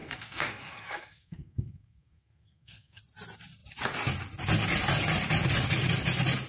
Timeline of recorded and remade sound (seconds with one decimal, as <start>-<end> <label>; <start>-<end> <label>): 0.0-3.0 remade; 3.0-6.5 recorded